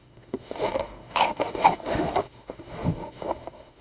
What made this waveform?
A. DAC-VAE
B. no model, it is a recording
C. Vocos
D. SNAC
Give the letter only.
A